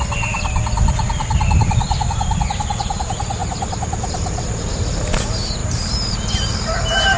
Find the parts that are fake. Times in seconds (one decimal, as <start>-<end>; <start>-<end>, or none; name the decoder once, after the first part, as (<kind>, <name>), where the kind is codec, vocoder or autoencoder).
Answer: 5.6-7.2 (vocoder, BigVGAN v2)